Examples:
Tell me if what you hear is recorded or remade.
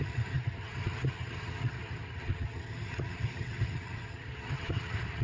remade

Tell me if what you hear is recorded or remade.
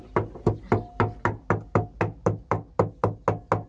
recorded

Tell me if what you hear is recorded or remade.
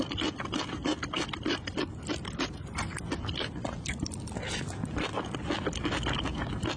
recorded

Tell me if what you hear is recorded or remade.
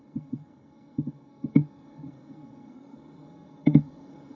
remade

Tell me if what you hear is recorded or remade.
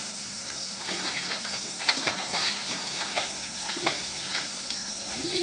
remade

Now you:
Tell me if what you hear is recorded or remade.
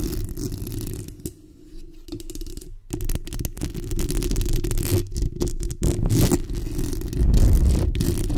recorded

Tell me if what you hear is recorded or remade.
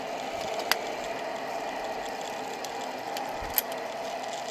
recorded